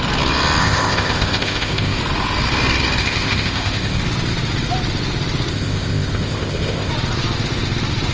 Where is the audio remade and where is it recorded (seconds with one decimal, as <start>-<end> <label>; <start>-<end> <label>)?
0.0-0.6 recorded; 0.6-2.0 remade; 2.0-3.0 recorded; 3.0-4.0 remade; 4.0-5.5 recorded; 5.5-6.9 remade; 6.9-8.1 recorded